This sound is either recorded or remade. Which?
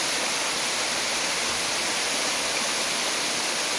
recorded